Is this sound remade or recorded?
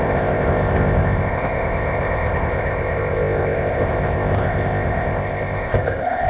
remade